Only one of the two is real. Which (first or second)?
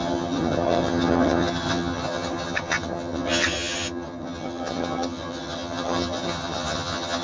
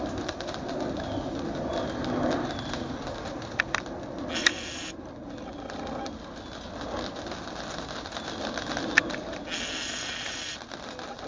second